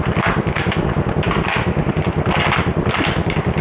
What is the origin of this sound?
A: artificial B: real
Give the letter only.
B